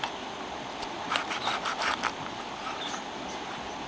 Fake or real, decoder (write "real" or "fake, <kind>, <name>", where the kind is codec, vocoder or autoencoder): real